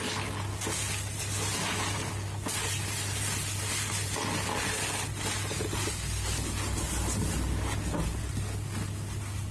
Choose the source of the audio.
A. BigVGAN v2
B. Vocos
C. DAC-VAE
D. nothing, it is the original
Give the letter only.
D